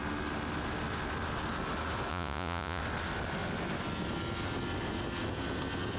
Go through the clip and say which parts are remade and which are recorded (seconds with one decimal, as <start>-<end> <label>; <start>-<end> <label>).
0.0-2.1 recorded; 2.1-2.8 remade; 2.8-6.0 recorded

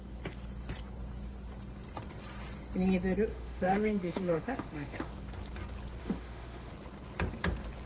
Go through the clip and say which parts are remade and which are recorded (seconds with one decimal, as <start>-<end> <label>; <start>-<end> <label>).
0.0-3.3 recorded; 3.3-5.1 remade; 5.1-6.0 recorded; 6.0-6.7 remade; 6.7-7.9 recorded

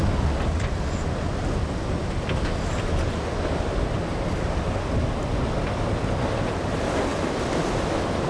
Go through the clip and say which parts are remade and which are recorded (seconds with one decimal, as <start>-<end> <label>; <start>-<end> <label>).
0.0-8.3 recorded

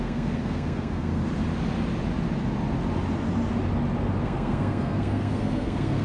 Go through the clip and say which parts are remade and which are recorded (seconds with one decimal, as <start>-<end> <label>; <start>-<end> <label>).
0.0-1.2 remade; 1.2-4.2 recorded; 4.2-6.0 remade